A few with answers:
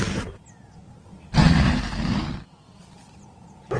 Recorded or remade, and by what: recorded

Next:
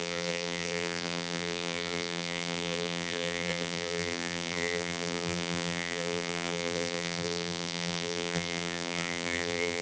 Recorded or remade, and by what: remade, vocoder, BigVGAN v2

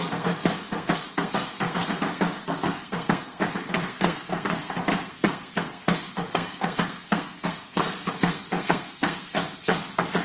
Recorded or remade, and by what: remade, codec, SNAC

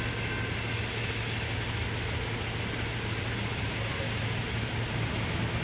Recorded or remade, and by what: recorded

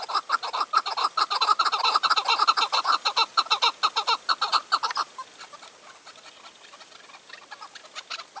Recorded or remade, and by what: recorded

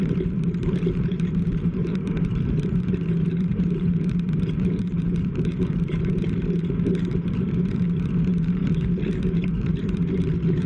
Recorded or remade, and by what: remade, vocoder, BigVGAN v2